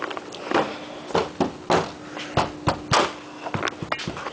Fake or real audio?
real